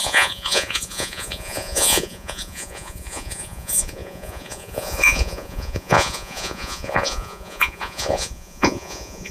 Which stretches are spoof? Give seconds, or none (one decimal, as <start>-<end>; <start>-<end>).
0.0-9.3